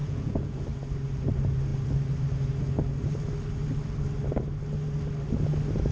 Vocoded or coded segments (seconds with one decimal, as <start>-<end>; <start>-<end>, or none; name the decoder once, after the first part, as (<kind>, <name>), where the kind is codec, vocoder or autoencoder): 0.0-0.6 (vocoder, Vocos)